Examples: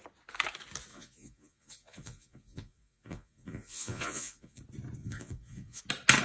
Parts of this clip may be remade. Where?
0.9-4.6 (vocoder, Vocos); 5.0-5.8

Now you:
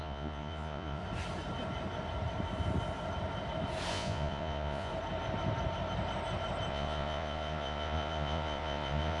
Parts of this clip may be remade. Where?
0.0-1.0 (vocoder, Vocos); 3.9-4.9; 6.7-9.2